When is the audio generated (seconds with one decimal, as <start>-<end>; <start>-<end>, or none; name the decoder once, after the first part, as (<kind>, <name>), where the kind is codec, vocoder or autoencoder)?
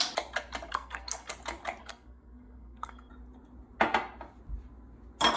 0.7-1.3 (codec, SNAC); 1.8-3.1